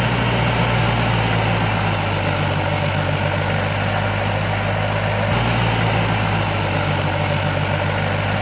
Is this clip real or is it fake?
real